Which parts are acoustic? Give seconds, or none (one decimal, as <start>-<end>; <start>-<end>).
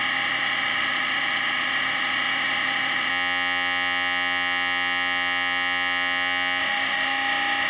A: 3.1-6.6